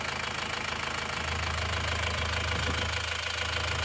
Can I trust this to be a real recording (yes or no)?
yes